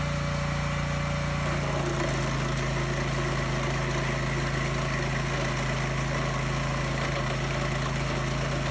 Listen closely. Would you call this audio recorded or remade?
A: recorded